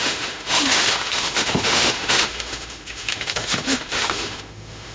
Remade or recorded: remade